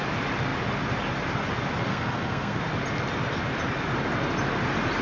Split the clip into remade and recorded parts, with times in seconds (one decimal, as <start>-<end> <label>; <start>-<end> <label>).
0.0-1.9 recorded; 1.9-2.6 remade; 2.6-5.0 recorded